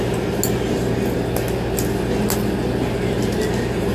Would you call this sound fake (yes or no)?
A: no